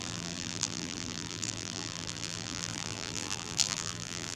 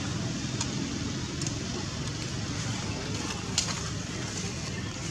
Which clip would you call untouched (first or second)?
second